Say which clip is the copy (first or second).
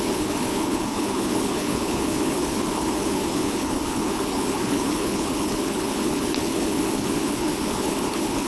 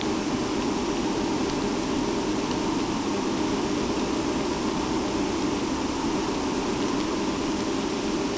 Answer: first